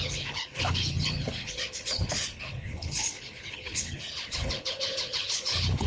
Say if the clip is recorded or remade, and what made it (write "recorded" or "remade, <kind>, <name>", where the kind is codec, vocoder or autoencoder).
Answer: remade, codec, HILCodec